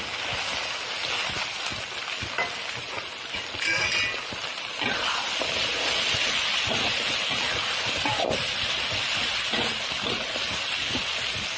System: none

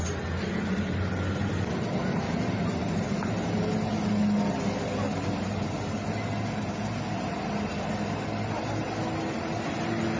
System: none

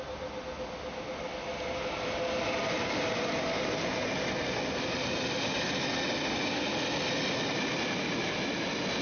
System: none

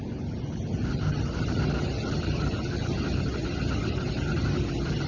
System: none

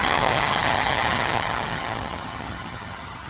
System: vocoder, HiFi-GAN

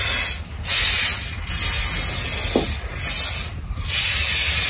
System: none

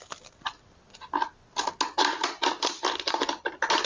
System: none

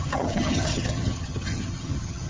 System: vocoder, HiFi-GAN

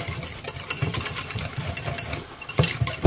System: none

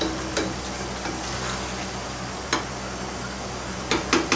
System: none